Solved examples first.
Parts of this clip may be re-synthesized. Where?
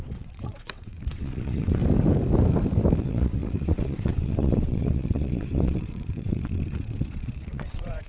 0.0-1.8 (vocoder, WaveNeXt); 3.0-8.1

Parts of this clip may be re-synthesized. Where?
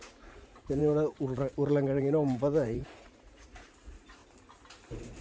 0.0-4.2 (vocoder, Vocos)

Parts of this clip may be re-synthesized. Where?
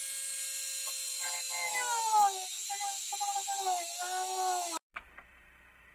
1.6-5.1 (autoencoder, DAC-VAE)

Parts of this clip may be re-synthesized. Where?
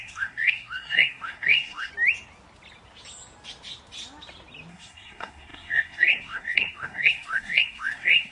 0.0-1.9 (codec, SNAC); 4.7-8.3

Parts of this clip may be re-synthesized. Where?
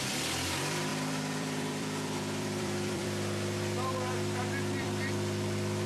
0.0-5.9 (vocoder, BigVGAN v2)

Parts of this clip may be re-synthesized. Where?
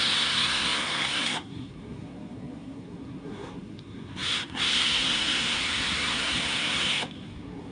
0.0-7.7 (codec, SNAC)